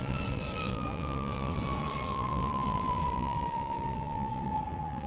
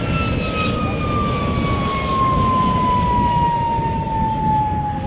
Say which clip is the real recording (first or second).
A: second